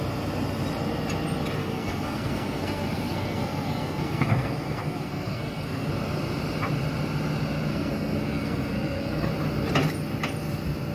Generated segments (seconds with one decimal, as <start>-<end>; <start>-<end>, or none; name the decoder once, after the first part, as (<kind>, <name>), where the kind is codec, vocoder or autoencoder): 1.6-5.9 (codec, SNAC); 7.7-9.3